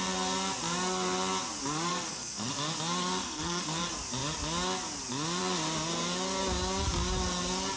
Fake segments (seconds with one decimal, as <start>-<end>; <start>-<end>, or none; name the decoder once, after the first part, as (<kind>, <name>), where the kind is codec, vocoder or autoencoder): 1.9-2.5 (codec, SNAC); 3.2-3.8